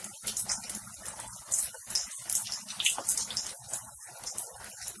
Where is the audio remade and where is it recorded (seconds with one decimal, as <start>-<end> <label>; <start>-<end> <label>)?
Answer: 0.0-5.0 recorded